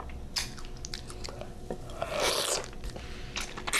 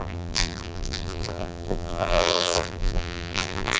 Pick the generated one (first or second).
second